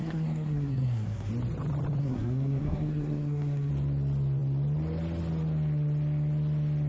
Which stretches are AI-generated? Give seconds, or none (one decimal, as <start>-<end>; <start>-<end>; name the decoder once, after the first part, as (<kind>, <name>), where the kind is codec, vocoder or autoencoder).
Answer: 0.0-1.3 (codec, SNAC); 2.0-3.7